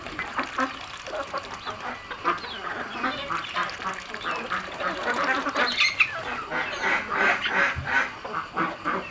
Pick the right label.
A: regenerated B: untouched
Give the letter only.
B